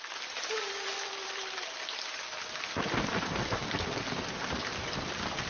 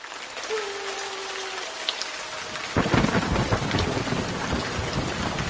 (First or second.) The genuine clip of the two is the second